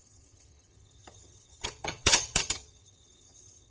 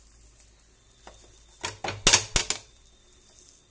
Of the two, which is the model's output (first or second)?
first